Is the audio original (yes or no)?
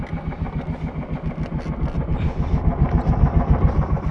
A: yes